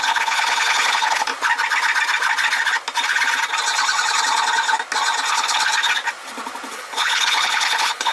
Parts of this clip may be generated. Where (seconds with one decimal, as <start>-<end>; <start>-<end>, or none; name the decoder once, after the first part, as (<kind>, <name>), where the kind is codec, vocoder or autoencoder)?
0.0-1.3 (codec, HILCodec); 5.3-5.7; 6.7-8.1